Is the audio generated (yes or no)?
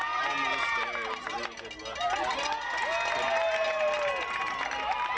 no